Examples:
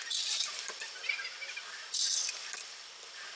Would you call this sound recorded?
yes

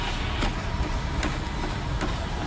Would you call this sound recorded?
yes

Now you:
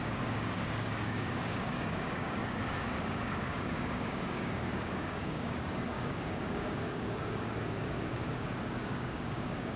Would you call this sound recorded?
no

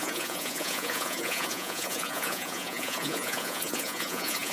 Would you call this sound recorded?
no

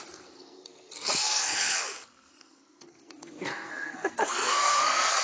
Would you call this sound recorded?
no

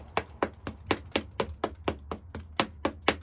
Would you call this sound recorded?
yes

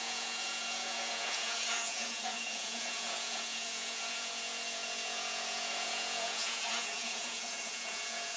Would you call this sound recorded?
no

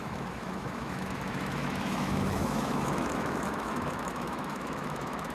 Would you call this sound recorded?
no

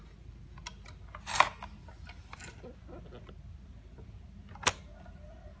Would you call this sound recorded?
yes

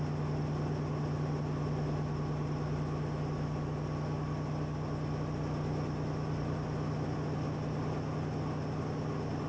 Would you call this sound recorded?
yes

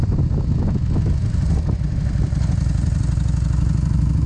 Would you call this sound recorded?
yes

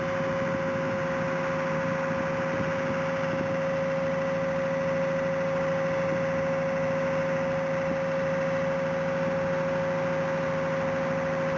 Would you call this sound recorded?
yes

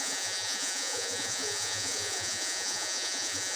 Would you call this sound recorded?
no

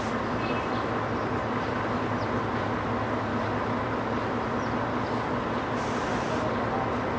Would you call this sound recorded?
yes